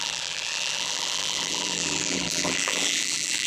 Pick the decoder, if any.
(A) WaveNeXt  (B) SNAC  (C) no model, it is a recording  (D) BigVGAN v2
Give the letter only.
D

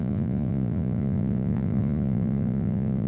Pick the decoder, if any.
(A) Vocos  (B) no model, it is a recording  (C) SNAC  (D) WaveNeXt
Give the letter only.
A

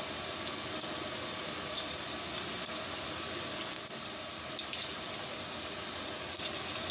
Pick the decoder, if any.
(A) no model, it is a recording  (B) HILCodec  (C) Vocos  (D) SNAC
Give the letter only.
A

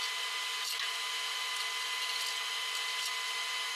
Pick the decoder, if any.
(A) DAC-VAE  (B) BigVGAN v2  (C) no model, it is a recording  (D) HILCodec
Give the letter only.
C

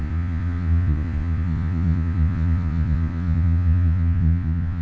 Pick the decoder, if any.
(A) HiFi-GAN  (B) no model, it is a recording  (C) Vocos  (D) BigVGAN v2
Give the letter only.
C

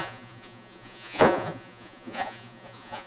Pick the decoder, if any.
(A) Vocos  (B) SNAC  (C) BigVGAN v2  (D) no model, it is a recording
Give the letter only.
A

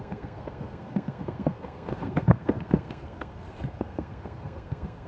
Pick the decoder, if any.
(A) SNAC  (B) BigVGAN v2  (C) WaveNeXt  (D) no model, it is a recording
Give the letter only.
A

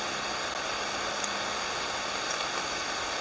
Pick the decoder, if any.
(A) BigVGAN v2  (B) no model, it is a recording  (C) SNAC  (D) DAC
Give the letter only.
B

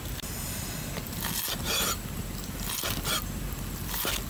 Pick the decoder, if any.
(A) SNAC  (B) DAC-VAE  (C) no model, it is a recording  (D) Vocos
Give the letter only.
C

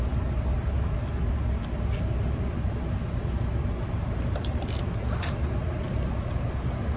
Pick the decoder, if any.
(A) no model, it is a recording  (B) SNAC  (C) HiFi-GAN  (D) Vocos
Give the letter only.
A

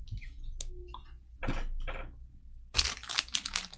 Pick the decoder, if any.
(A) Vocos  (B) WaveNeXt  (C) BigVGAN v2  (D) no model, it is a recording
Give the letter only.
D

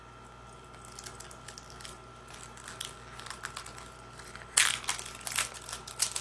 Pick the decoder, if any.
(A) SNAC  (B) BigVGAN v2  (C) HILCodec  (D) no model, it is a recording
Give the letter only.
D